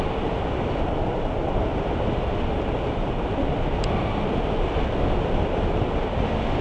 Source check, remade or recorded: recorded